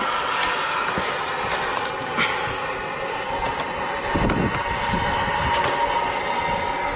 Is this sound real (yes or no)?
yes